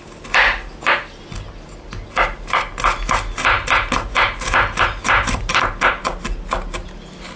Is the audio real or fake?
real